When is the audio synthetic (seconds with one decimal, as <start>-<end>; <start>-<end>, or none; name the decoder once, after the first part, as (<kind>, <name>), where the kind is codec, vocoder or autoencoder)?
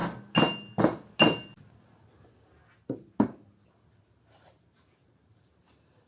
3.7-6.1 (vocoder, BigVGAN v2)